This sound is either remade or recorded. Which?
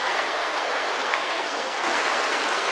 remade